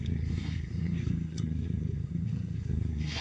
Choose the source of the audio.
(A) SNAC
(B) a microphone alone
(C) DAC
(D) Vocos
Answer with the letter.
A